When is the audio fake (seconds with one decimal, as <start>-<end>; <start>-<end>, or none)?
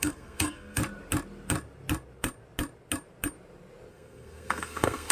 0.0-0.8; 3.9-5.1